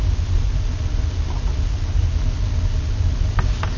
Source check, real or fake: real